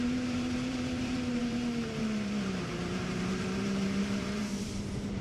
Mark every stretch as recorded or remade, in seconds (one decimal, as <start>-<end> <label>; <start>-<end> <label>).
0.0-5.2 remade